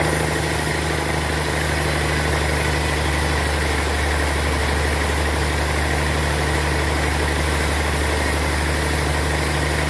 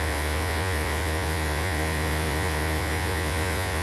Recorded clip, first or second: first